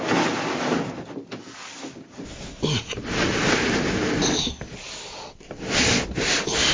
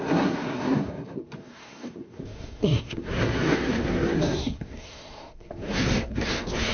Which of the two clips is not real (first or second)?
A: second